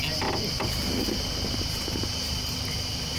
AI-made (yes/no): no